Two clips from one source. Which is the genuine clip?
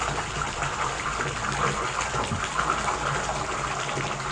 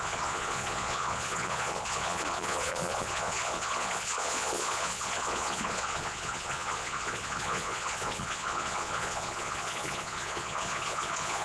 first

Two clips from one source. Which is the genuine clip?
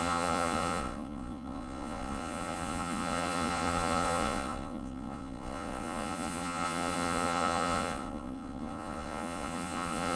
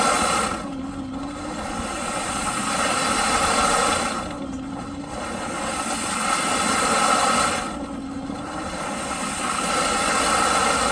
second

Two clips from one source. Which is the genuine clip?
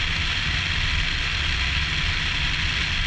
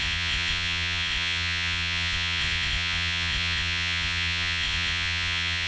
first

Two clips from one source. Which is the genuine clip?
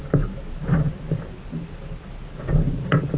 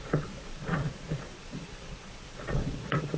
first